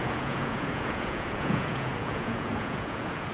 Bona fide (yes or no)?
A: no